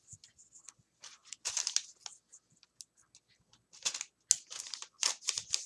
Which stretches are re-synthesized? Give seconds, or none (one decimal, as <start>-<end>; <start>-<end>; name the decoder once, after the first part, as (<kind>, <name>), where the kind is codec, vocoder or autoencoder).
none